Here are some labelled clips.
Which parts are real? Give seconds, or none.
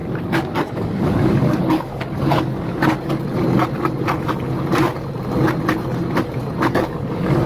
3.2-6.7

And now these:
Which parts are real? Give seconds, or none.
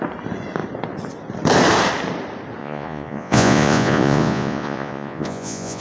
0.0-2.6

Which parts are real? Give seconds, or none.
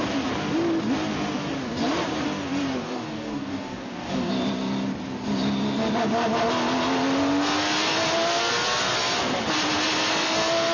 0.0-2.8; 4.3-10.7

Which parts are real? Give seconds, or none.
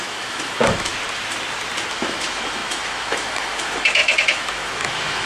0.9-1.9